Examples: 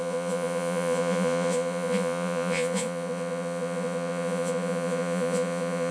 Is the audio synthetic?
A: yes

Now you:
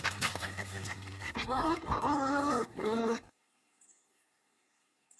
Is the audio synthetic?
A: yes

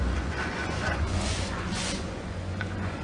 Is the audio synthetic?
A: yes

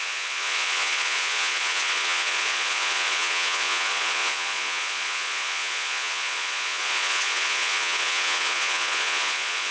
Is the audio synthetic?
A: yes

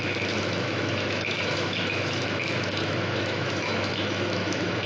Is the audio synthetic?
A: yes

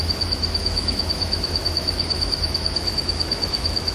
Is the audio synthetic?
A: yes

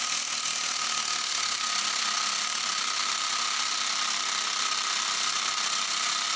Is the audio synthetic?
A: no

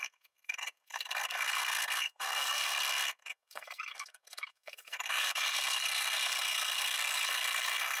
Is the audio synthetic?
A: yes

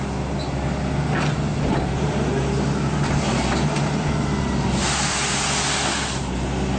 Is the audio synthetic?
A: no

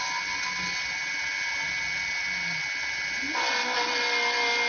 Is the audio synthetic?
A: no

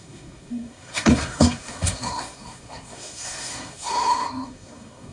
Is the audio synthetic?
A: yes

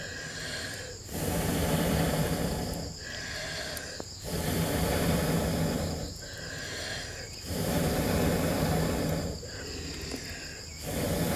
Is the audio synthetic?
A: no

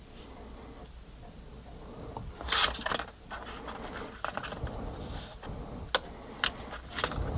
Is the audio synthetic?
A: no